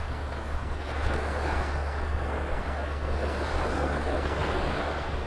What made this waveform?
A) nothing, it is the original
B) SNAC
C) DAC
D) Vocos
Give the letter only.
B